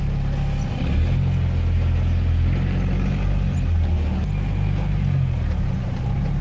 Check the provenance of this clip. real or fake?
real